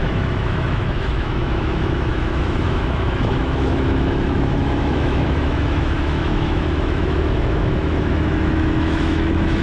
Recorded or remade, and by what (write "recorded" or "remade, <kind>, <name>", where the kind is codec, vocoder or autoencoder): remade, autoencoder, DAC-VAE